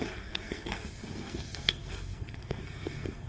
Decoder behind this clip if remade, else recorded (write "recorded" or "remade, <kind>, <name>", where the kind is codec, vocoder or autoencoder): remade, codec, SNAC